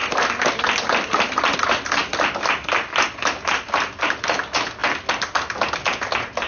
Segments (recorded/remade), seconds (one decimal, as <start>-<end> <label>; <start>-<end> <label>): 0.0-0.5 remade; 0.5-6.5 recorded